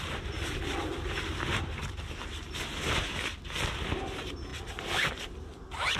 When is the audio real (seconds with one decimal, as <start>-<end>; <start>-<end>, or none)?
0.0-6.0